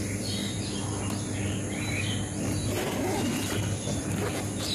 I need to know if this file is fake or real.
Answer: real